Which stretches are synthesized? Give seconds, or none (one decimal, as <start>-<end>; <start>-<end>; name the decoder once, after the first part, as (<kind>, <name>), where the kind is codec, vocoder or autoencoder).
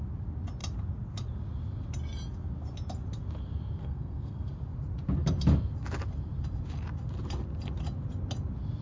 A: 3.8-4.5 (codec, SNAC)